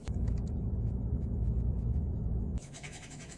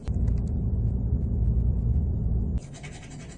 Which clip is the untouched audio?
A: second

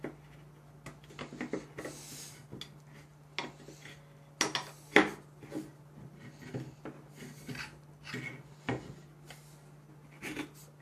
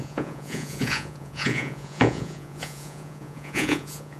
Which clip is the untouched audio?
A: first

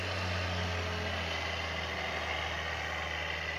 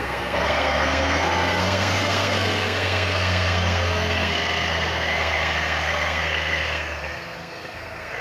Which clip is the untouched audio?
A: first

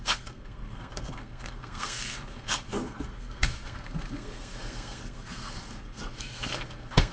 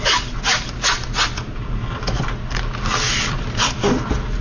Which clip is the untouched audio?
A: second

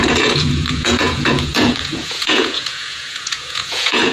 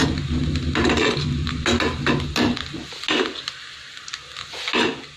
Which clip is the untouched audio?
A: second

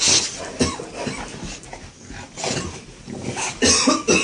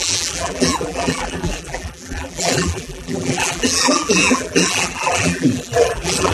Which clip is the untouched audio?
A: first